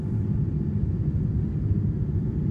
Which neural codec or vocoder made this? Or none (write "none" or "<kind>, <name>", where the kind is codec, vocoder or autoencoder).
none